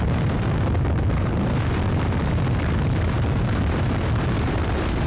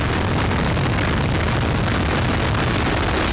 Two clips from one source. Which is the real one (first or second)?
second